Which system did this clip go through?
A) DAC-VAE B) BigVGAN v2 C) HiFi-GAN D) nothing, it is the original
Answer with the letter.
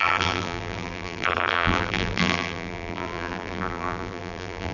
B